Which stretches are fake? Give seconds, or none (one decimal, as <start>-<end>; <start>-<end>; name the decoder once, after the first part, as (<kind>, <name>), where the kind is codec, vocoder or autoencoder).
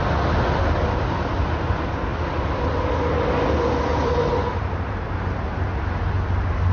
none